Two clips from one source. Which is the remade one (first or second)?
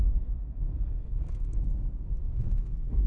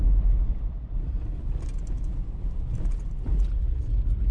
first